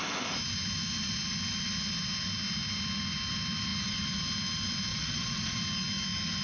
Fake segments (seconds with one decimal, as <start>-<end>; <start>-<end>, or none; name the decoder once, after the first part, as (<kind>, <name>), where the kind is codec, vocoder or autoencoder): 4.9-5.6 (vocoder, WaveNeXt)